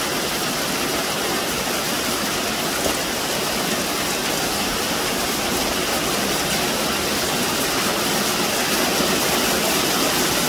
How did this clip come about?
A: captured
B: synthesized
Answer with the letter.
A